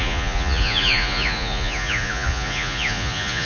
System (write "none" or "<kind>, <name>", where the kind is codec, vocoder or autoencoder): vocoder, Vocos